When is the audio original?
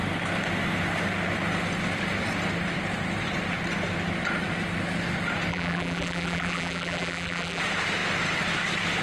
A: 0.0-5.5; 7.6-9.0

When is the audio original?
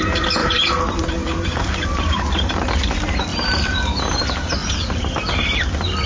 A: 0.0-0.4; 2.5-3.3; 4.0-4.6; 5.2-6.1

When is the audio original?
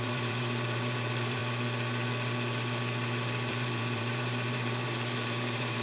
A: 1.4-3.5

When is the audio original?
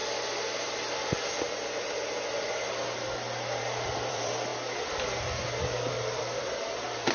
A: 0.0-3.6; 4.5-5.9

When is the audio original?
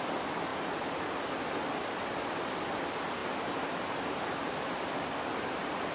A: 0.0-5.9